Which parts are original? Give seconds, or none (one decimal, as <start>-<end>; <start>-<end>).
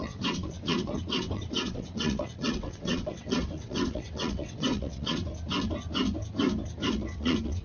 5.3-6.9